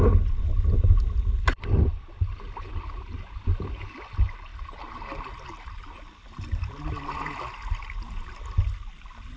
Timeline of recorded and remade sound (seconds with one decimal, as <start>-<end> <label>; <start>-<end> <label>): 0.0-9.4 recorded